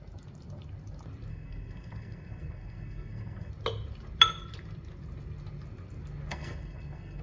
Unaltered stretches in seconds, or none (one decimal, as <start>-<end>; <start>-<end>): 0.0-1.3; 3.5-6.3